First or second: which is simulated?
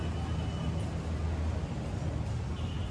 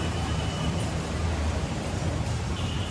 second